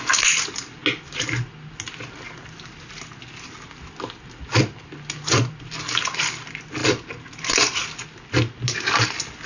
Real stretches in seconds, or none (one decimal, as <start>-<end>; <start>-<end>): 0.0-9.5